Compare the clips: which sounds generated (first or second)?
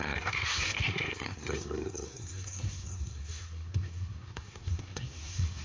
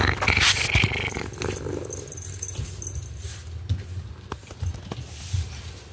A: first